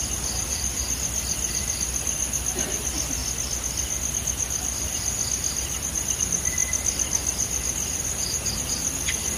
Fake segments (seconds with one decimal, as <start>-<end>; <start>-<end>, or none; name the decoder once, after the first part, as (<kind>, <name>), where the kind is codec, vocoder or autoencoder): none

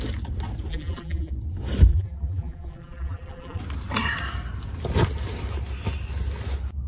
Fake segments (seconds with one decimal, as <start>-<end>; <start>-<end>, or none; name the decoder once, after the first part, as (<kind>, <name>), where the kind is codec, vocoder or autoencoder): 0.7-1.3 (vocoder, BigVGAN v2); 1.9-3.6